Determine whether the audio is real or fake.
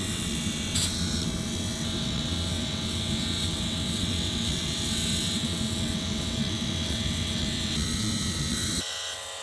fake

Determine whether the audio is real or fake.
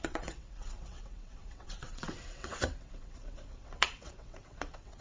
fake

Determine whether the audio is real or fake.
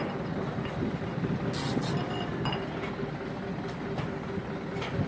real